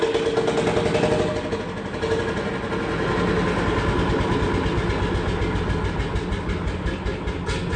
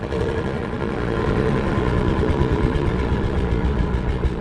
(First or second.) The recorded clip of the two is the first